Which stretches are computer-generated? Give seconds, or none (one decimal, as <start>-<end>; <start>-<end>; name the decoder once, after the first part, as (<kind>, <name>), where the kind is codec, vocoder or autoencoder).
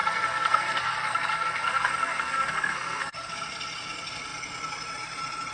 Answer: 0.0-3.3 (codec, SNAC)